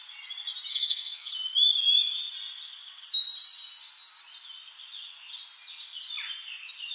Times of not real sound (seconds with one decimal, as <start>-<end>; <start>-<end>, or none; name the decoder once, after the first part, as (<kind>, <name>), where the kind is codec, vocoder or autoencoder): 0.7-1.3 (codec, SNAC)